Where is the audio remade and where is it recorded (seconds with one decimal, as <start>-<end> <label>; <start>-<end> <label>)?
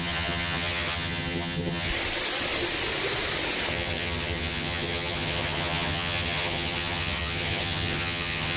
0.0-1.9 remade; 1.9-3.7 recorded; 3.7-8.6 remade